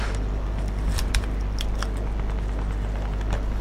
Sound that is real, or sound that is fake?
real